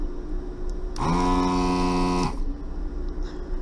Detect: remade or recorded recorded